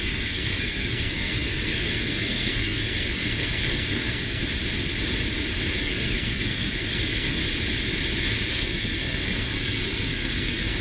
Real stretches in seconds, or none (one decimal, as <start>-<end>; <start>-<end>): 4.4-5.8; 7.4-8.5